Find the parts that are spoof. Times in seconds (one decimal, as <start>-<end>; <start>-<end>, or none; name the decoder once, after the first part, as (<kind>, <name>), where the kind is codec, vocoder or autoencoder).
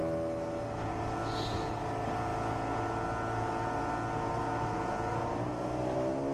none